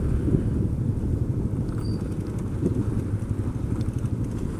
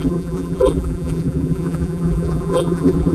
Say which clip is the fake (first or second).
second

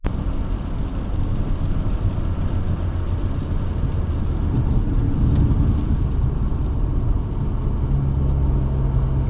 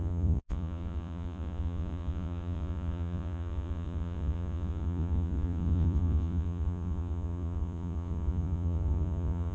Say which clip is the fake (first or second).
second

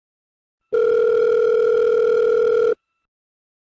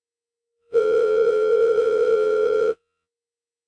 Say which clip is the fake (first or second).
second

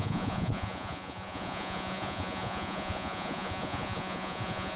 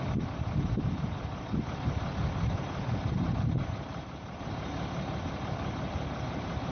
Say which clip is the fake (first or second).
first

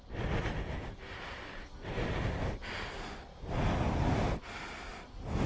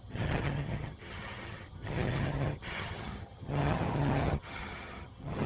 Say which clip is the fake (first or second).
second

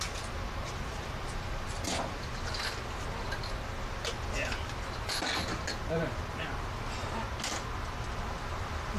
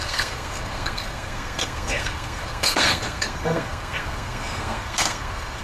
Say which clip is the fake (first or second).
second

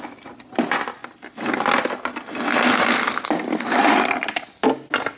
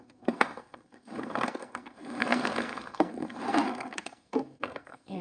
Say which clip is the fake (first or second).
second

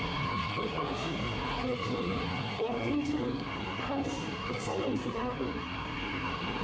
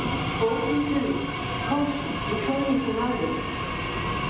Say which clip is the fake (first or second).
first